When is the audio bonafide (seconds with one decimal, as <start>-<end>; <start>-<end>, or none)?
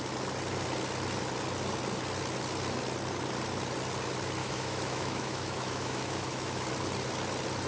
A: 0.0-4.4; 6.6-7.7